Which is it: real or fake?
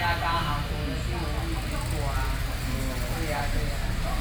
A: real